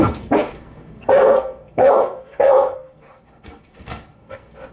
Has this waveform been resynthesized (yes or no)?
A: yes